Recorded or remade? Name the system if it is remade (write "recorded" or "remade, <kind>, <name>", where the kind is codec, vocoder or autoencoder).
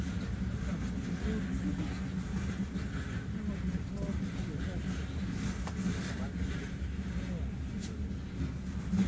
recorded